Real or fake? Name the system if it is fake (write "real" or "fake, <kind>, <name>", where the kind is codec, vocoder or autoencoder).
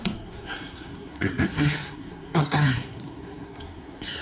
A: fake, codec, SNAC